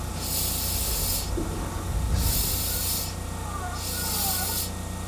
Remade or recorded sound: recorded